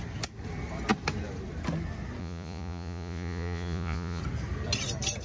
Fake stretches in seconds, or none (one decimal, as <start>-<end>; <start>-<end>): 2.2-4.2